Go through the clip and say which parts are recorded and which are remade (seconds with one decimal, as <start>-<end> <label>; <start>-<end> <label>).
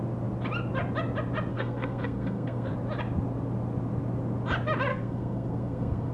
0.0-1.5 recorded; 1.5-2.7 remade; 2.7-4.9 recorded; 4.9-6.1 remade